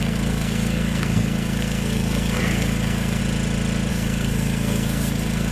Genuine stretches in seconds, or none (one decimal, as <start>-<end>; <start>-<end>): 3.2-3.9